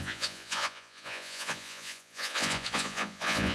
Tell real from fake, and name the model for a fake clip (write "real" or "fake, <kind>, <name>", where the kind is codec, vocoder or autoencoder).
fake, vocoder, Vocos